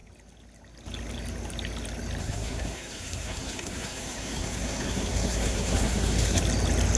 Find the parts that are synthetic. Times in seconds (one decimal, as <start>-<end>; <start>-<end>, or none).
2.2-6.4